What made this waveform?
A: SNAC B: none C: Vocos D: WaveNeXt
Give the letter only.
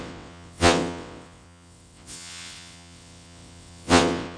D